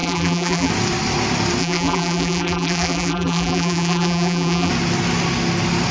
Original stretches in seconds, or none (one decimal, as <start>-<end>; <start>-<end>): 0.7-1.6; 4.7-5.9